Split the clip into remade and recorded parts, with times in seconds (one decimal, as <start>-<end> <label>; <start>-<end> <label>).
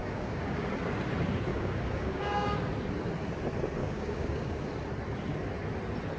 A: 0.0-0.7 remade; 0.7-1.5 recorded; 1.5-2.7 remade; 2.7-3.8 recorded; 3.8-4.7 remade; 4.7-6.2 recorded